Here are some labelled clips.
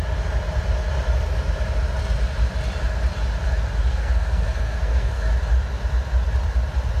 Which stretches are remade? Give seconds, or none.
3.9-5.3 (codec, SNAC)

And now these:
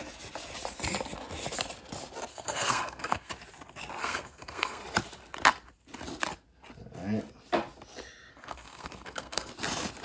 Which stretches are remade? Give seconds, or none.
2.3-3.3 (codec, SNAC); 4.0-4.8; 8.3-9.5